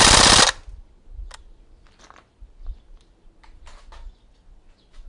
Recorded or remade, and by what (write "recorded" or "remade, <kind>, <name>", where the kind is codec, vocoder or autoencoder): recorded